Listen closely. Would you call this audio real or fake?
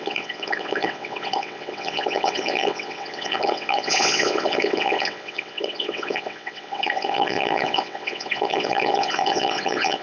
fake